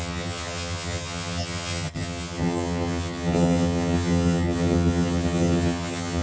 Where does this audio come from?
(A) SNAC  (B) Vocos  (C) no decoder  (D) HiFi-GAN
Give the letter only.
D